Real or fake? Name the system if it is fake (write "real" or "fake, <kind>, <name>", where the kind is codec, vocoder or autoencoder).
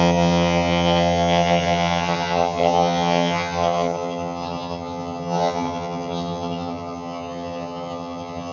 fake, vocoder, HiFi-GAN